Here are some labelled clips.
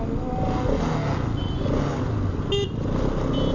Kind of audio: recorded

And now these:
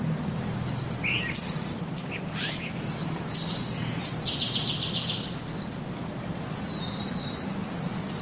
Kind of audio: recorded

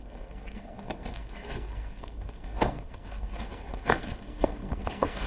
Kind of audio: remade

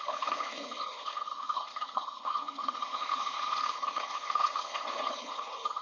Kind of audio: remade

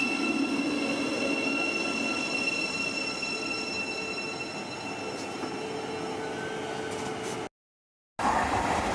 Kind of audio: recorded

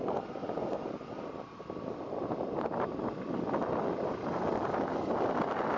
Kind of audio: recorded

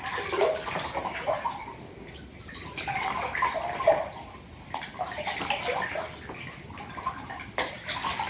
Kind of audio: recorded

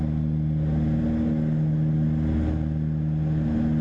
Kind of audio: recorded